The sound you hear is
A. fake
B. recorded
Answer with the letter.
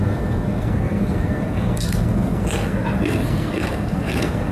A